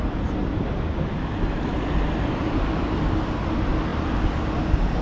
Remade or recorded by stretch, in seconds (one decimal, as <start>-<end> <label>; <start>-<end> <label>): 0.0-5.0 recorded